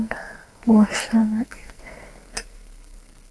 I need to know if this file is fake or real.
fake